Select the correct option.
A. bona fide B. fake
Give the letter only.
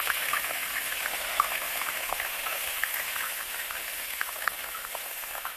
B